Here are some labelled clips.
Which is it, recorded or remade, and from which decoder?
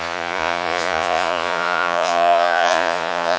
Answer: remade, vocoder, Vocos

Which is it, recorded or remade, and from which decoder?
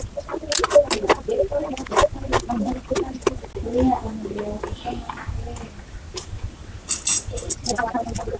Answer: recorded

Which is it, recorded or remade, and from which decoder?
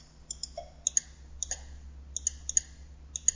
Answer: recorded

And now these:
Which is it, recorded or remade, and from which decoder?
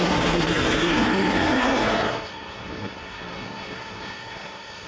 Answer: remade, codec, SNAC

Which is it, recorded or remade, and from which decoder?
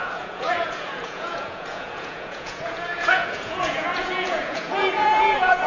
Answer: remade, vocoder, Vocos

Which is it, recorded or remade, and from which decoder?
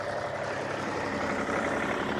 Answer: remade, vocoder, BigVGAN v2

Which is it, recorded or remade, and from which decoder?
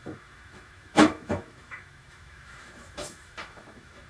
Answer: remade, autoencoder, DAC-VAE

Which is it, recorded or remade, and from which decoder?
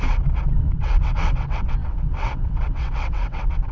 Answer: remade, vocoder, WaveNeXt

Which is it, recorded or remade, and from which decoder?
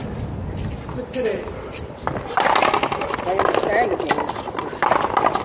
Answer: recorded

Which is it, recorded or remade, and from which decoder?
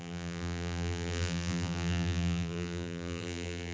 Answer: remade, vocoder, BigVGAN v2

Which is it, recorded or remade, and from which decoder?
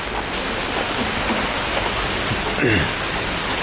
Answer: recorded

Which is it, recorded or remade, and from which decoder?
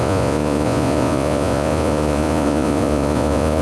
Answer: remade, vocoder, Vocos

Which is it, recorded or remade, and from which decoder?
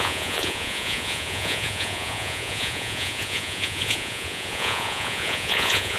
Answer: remade, vocoder, Vocos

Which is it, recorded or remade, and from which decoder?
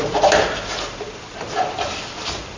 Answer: recorded